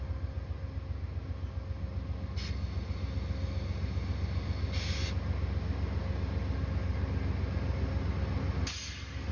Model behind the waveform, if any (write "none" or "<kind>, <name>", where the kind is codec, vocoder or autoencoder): none